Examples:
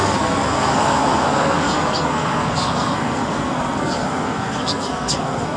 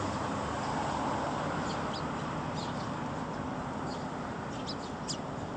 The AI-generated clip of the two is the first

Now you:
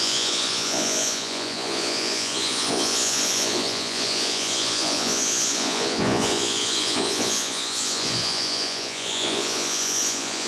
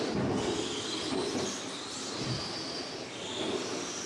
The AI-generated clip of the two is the first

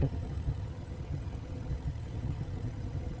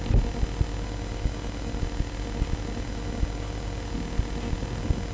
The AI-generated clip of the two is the first